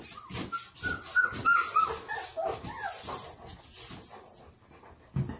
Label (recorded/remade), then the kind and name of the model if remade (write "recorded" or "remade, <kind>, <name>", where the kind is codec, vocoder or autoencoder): recorded